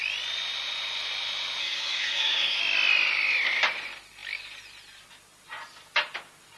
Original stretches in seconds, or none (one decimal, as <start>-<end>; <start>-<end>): 0.0-1.6; 2.6-6.6